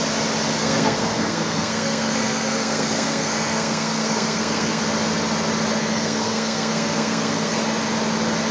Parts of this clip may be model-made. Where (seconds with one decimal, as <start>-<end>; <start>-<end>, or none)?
0.6-4.8; 5.8-7.6